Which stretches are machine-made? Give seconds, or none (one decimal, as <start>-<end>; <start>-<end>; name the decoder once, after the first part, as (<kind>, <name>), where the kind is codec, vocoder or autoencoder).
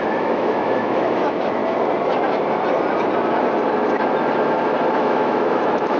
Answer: 0.0-1.6 (autoencoder, DAC-VAE); 4.9-6.0